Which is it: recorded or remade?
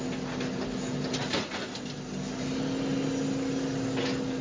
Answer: recorded